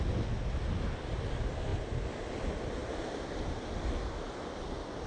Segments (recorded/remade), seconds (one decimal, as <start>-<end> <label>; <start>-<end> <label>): 0.0-5.1 recorded